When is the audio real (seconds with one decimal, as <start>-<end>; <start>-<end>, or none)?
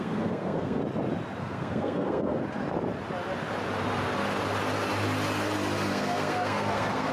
0.8-1.4; 2.4-5.9